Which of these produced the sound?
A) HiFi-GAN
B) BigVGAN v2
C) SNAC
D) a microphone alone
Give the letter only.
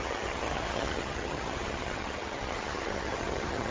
A